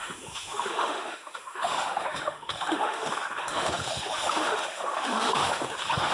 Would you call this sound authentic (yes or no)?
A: no